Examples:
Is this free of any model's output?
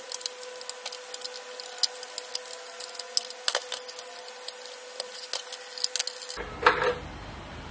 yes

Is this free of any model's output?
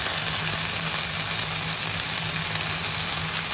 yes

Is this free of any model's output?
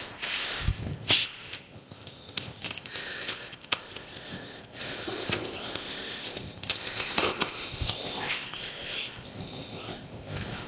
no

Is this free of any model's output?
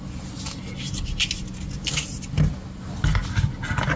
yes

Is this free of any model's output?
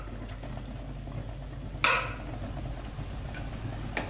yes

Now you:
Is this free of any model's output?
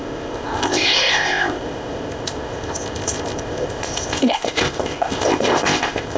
no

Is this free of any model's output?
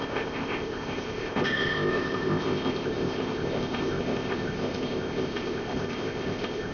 no